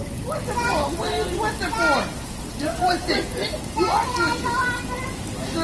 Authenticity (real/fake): real